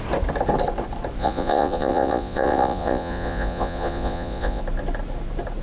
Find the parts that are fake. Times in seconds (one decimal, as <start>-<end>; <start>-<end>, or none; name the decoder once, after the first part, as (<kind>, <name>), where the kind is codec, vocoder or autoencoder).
1.2-4.6 (vocoder, Vocos)